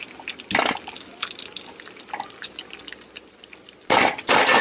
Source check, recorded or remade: recorded